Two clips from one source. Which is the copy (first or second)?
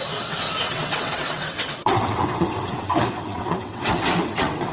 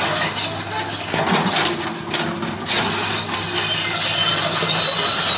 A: first